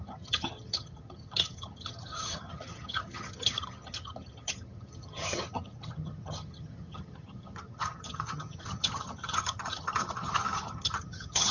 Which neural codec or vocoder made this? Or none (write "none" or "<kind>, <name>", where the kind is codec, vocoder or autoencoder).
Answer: vocoder, HiFi-GAN